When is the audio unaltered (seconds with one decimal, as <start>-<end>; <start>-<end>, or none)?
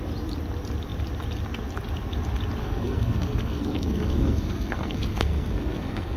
0.0-2.6